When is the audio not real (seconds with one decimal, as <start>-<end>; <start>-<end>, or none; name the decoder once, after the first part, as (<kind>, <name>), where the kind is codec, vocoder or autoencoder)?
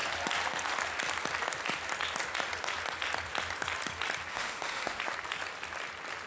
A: 4.3-5.0 (autoencoder, DAC-VAE)